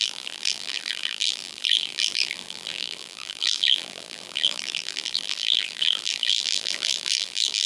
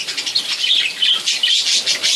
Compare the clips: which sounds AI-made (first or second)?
first